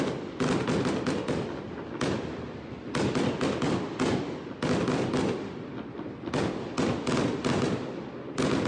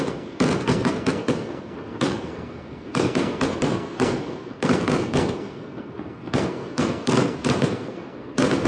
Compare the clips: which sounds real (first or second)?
first